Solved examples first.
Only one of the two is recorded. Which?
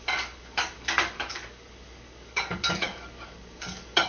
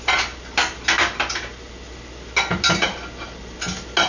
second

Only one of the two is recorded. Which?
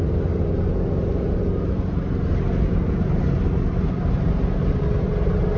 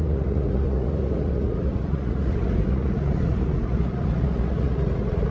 first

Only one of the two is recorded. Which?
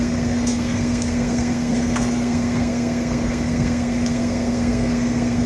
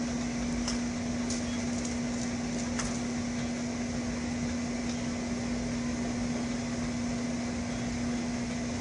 second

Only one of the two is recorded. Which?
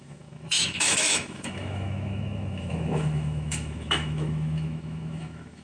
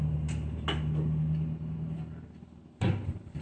second